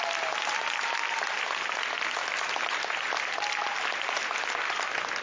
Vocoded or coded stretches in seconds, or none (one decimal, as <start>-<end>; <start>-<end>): none